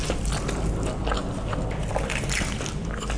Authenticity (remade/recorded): recorded